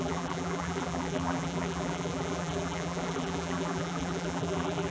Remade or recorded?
remade